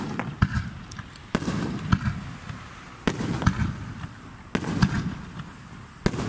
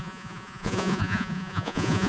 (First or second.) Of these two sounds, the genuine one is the first